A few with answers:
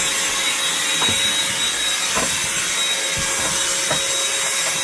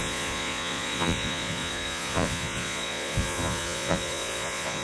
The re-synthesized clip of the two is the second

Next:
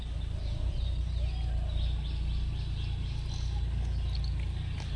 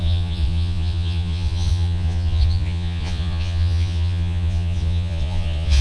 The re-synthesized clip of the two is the second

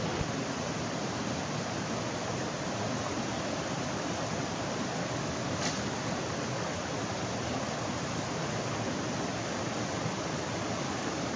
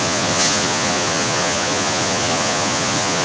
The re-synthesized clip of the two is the second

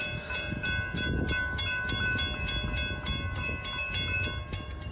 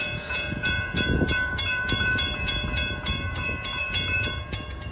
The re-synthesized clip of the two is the second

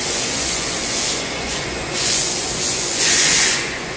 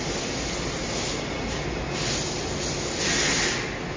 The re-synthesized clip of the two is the first